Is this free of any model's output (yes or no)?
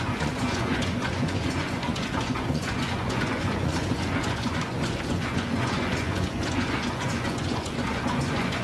no